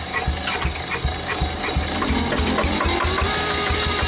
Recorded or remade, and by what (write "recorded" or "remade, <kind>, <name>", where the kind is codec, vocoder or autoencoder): recorded